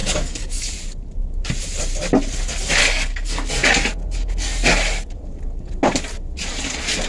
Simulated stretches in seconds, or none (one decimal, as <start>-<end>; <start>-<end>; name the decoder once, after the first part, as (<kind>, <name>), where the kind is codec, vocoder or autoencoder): 0.0-0.7 (codec, DAC); 2.8-3.5